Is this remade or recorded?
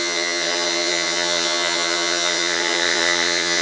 remade